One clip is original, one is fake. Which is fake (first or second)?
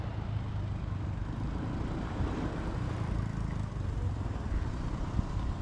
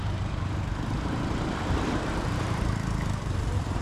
second